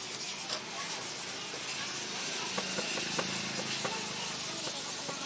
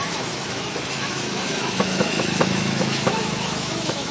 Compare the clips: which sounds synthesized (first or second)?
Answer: second